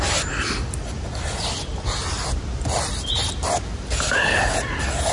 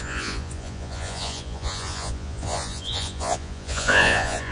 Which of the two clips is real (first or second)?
first